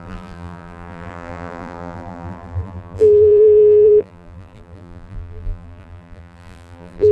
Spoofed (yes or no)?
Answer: yes